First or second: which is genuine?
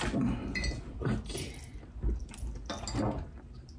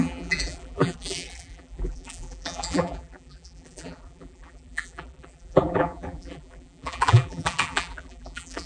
first